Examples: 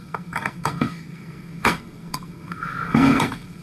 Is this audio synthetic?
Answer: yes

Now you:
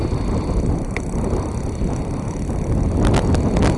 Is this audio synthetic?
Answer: no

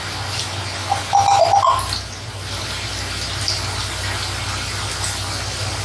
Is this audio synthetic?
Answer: no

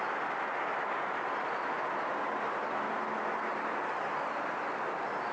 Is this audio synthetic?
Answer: no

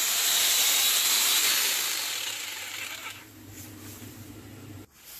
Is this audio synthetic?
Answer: yes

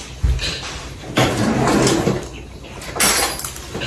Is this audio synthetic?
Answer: no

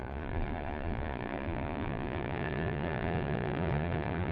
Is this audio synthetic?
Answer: yes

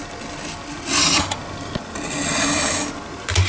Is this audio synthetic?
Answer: no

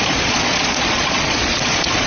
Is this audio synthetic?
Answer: yes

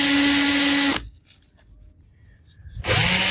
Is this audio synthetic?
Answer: no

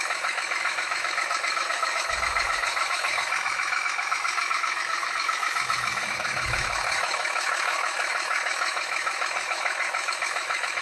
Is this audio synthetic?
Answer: yes